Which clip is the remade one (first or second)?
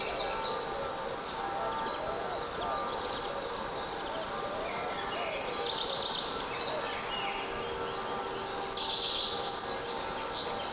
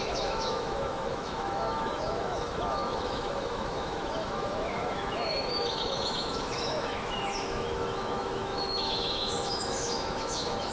second